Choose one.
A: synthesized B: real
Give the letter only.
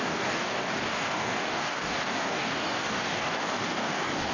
A